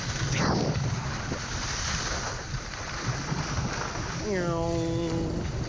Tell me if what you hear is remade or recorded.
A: recorded